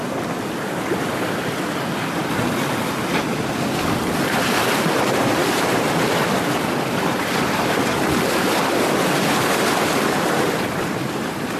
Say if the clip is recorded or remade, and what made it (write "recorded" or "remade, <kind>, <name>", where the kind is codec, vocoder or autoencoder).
remade, vocoder, BigVGAN v2